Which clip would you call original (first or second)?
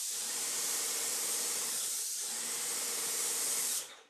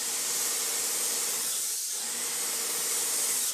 second